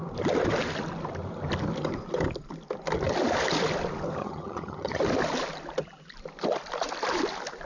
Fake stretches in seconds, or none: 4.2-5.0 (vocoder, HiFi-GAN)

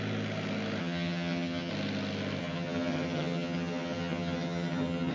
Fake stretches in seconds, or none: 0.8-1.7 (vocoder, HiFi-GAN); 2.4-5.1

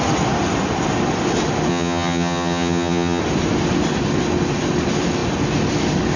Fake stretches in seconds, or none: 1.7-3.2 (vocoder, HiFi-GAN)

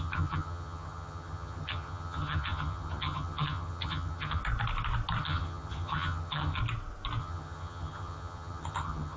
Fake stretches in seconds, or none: 0.0-4.4 (vocoder, HiFi-GAN); 5.2-6.6; 7.2-9.2

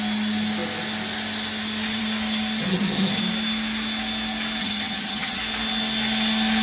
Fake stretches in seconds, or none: 2.6-3.2 (vocoder, HiFi-GAN); 4.6-5.4

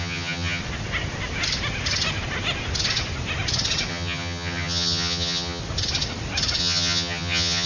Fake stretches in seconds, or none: 0.0-0.6 (vocoder, HiFi-GAN); 3.9-5.6; 6.6-7.7